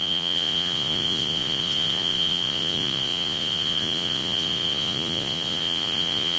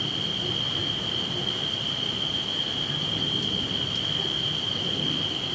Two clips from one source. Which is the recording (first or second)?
second